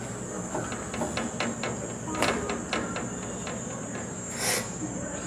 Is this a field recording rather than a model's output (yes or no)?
yes